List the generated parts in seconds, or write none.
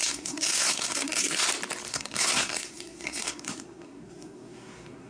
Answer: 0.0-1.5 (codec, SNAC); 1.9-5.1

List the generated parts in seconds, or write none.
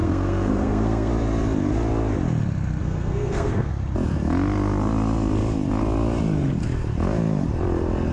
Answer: 0.0-1.1 (codec, SNAC); 2.8-3.7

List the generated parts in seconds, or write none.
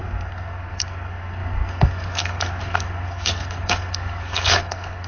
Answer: 0.0-5.1 (codec, SNAC)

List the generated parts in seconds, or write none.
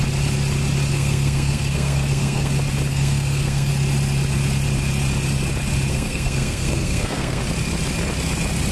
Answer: 0.9-2.5 (codec, SNAC); 2.9-3.7; 5.9-7.4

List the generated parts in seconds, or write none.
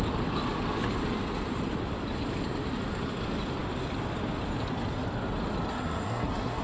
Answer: 5.7-6.6 (codec, SNAC)